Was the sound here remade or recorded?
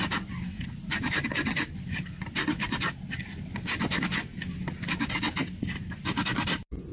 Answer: recorded